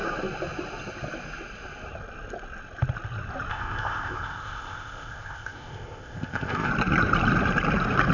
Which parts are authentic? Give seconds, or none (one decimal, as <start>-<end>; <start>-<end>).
0.0-3.5; 6.7-8.1

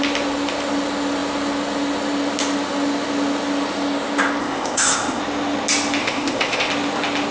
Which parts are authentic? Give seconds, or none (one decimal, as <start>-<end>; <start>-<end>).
0.0-4.4; 5.2-6.0; 6.7-7.3